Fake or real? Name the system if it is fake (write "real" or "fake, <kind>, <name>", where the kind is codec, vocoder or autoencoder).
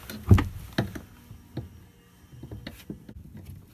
real